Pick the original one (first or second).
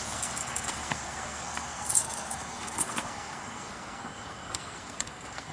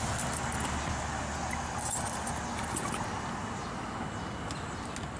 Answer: second